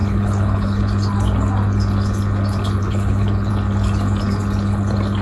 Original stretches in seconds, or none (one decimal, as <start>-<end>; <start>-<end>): 0.8-2.8; 3.5-5.2